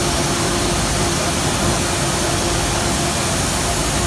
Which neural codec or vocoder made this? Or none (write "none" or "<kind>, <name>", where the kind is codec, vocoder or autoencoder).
none